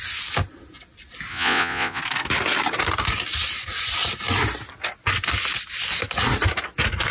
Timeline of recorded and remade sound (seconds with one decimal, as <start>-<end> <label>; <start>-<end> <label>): 0.0-1.3 recorded; 1.3-2.0 remade; 2.0-7.1 recorded